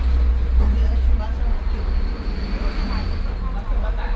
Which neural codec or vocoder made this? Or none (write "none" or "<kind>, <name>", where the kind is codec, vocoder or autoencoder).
none